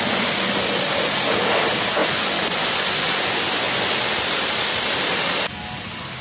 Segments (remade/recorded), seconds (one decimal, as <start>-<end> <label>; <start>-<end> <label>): 0.0-2.0 recorded; 2.0-4.0 remade; 4.0-6.2 recorded

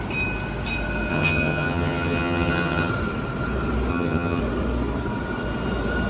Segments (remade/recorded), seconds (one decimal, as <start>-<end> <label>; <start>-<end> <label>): 0.0-1.1 recorded; 1.1-2.9 remade; 2.9-3.9 recorded; 3.9-4.4 remade; 4.4-6.1 recorded